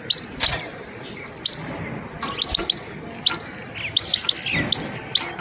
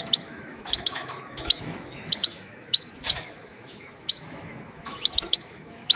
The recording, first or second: first